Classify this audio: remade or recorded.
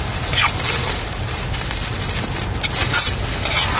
recorded